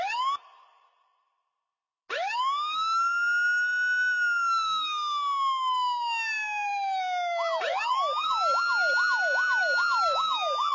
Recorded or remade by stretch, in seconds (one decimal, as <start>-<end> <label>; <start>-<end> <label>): 0.0-10.7 recorded